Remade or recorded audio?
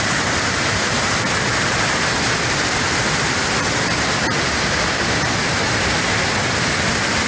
recorded